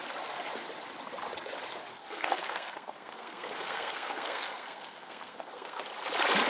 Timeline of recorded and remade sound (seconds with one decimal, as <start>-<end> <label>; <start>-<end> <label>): 0.0-1.9 recorded; 1.9-5.8 remade; 5.8-6.5 recorded